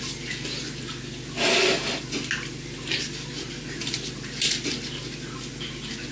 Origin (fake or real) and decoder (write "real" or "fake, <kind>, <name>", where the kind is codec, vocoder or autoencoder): real